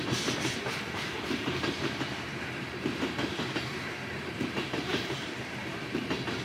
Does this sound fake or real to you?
fake